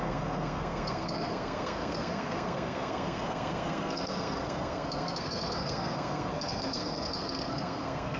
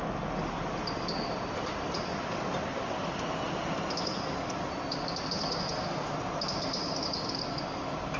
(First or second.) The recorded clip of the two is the second